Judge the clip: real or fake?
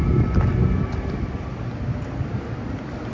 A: real